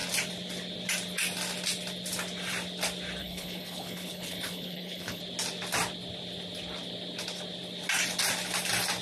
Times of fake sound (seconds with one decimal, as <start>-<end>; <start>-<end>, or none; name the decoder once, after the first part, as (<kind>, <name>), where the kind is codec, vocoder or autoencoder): 3.2-5.2 (codec, HILCodec)